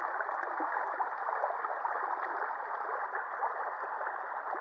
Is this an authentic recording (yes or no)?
yes